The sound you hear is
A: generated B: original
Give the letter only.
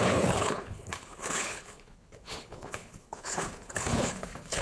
A